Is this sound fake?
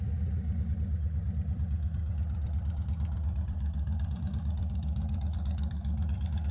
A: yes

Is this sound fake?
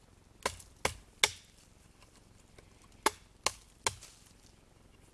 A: no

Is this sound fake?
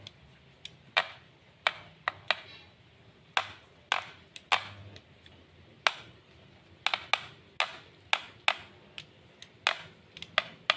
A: no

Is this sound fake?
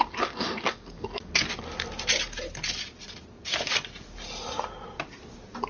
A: no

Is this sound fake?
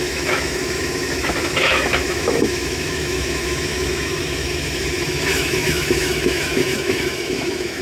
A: yes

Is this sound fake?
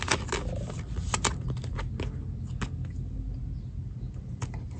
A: no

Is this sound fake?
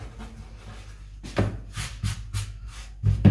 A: no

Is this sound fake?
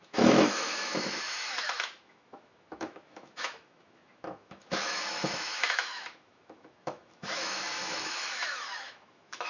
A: yes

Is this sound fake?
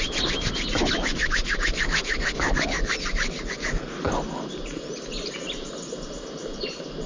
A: no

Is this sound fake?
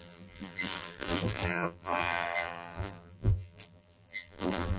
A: yes